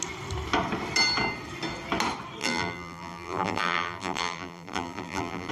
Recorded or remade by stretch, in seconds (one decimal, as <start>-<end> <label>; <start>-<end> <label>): 0.0-2.4 recorded; 2.4-5.5 remade